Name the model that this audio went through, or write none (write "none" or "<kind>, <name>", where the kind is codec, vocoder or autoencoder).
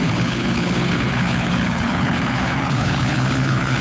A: codec, HILCodec